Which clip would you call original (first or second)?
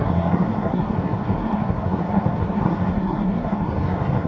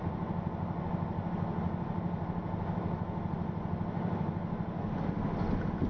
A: second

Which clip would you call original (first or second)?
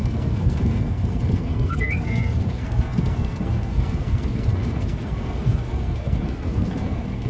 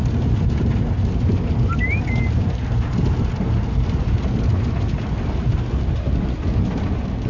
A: second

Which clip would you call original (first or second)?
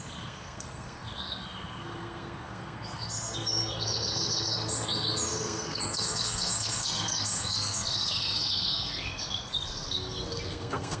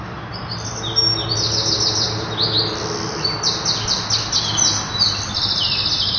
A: second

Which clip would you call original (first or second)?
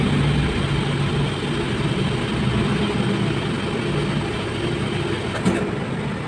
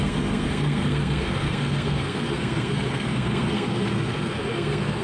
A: first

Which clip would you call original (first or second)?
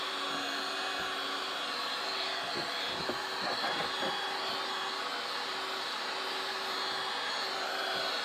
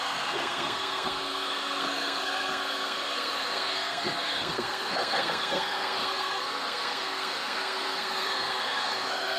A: first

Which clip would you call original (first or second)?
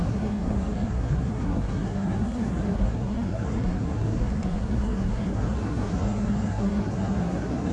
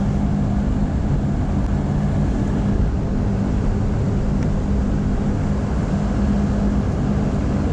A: second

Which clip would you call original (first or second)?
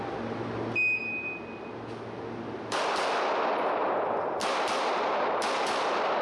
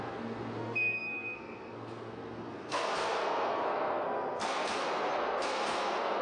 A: first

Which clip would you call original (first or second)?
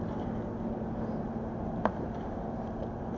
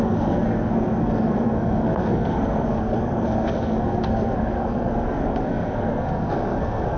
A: first